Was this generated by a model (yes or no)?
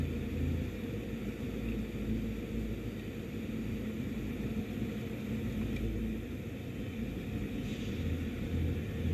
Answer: no